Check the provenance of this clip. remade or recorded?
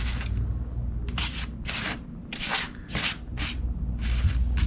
recorded